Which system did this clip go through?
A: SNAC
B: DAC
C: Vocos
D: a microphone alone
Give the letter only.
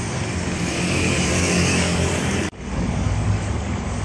B